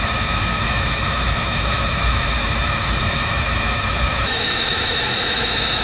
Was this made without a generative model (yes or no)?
no